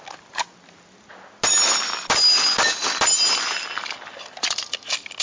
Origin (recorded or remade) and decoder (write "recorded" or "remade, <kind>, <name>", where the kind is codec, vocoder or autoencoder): recorded